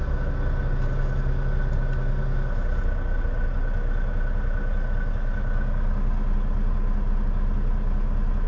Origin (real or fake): real